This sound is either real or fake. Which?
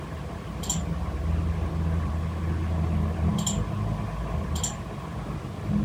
real